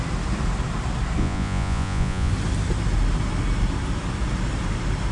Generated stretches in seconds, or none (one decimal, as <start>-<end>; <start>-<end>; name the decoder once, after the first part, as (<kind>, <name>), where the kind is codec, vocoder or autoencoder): 1.2-2.3 (vocoder, Vocos)